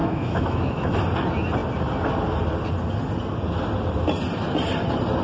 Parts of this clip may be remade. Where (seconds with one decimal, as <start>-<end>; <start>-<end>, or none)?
0.0-1.0